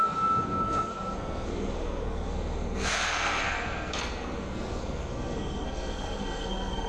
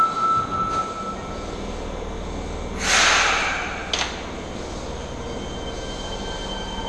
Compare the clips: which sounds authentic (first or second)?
second